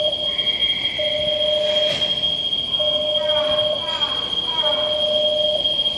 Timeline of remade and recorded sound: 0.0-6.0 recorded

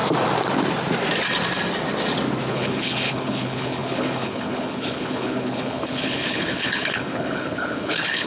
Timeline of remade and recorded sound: 0.0-2.5 recorded; 2.5-8.3 remade

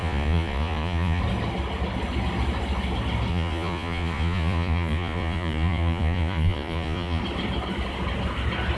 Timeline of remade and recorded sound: 0.0-1.2 remade; 1.2-3.3 recorded; 3.3-7.2 remade; 7.2-8.8 recorded

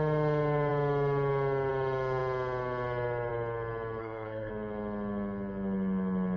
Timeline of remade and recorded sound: 0.0-4.0 recorded; 4.0-4.5 remade; 4.5-6.4 recorded

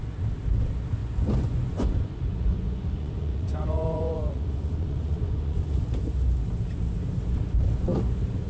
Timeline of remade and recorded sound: 0.0-1.0 recorded; 1.0-6.0 remade; 6.0-8.5 recorded

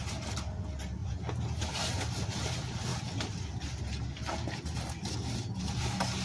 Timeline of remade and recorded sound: 0.0-6.2 recorded